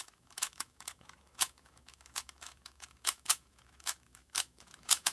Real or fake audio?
fake